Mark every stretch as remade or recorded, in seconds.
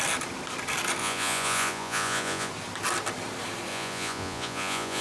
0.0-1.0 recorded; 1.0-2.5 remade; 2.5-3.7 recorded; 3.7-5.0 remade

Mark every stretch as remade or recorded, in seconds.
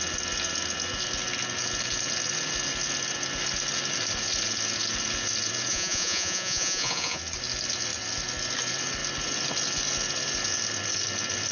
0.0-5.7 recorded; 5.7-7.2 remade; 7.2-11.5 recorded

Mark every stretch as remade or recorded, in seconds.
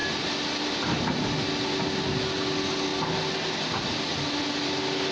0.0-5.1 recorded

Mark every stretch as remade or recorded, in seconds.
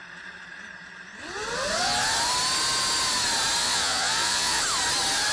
0.0-3.6 recorded; 3.6-4.6 remade; 4.6-5.3 recorded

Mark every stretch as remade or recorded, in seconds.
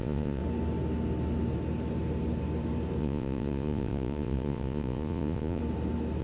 0.0-0.4 remade; 0.4-3.0 recorded; 3.0-5.6 remade; 5.6-6.2 recorded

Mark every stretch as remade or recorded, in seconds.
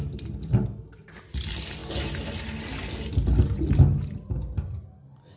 0.0-5.4 recorded